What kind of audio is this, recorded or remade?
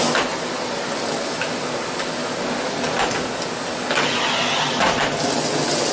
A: recorded